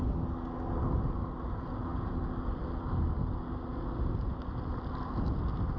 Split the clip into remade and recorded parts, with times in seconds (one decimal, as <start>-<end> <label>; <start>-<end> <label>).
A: 0.0-5.8 recorded